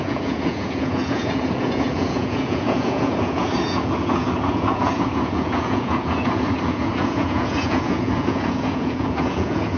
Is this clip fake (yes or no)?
yes